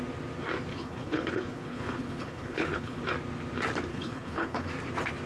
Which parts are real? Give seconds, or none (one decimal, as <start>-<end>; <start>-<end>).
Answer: 0.0-0.7; 3.0-3.9; 4.7-5.3